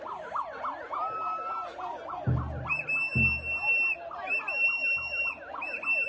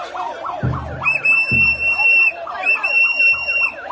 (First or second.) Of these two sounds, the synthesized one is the second